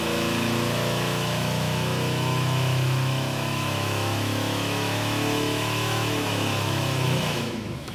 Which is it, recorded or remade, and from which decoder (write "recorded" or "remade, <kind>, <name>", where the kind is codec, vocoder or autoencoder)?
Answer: remade, autoencoder, DAC-VAE